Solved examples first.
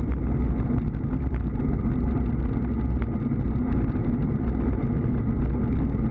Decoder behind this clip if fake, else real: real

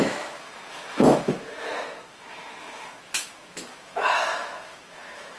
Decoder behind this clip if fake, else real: fake, autoencoder, DAC-VAE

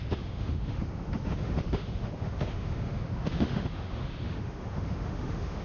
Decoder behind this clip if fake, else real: fake, autoencoder, DAC-VAE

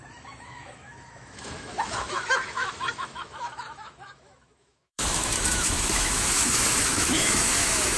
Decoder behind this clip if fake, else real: fake, autoencoder, DAC-VAE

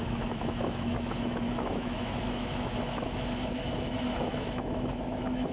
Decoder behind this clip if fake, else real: fake, autoencoder, DAC-VAE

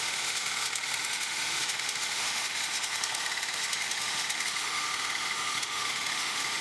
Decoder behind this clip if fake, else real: fake, autoencoder, DAC-VAE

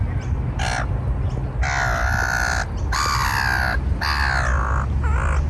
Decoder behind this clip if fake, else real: real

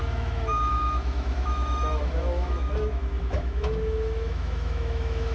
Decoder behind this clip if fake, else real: fake, autoencoder, DAC-VAE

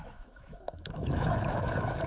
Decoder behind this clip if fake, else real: fake, autoencoder, DAC-VAE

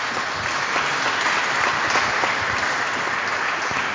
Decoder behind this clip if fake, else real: real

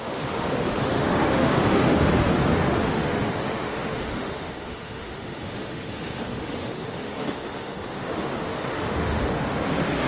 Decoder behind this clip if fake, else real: fake, autoencoder, DAC-VAE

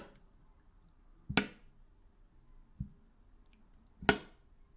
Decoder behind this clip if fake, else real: real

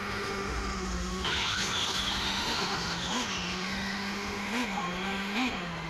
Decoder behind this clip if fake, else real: fake, autoencoder, DAC-VAE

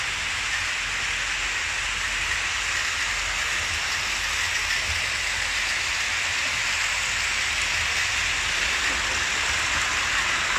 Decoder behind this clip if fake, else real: real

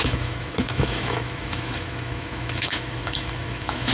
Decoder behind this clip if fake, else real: fake, autoencoder, DAC-VAE